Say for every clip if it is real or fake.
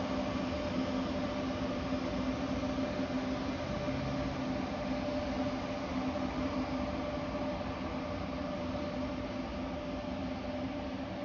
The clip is real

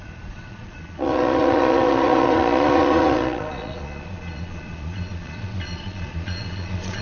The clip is fake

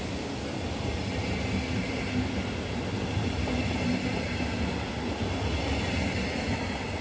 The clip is real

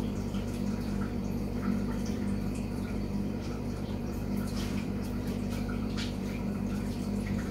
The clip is fake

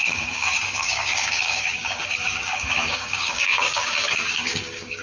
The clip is fake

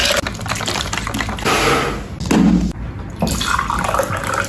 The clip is real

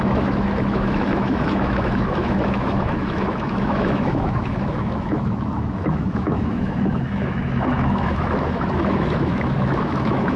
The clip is fake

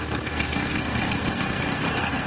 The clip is fake